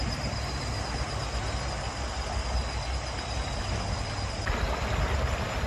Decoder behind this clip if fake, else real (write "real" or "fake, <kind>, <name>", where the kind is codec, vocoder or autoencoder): real